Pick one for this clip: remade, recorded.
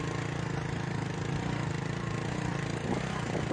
recorded